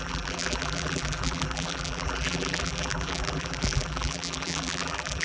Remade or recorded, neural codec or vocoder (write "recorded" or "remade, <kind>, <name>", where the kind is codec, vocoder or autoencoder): remade, vocoder, BigVGAN v2